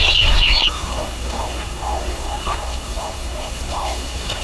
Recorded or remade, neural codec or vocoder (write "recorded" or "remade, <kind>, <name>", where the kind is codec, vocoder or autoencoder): remade, codec, SNAC